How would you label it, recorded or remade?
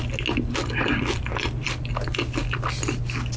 recorded